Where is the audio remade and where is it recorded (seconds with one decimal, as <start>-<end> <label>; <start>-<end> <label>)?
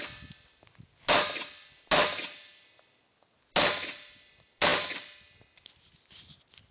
0.0-6.7 recorded